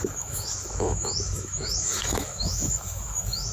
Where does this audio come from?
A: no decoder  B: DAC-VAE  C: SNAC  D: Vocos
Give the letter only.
B